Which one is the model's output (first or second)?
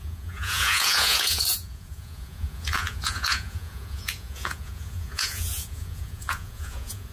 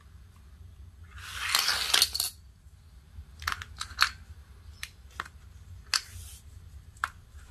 first